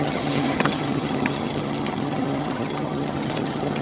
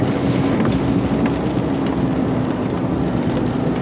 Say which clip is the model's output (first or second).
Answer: first